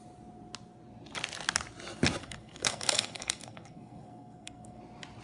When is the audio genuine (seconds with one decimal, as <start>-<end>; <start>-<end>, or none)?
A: 0.0-2.2; 4.8-5.2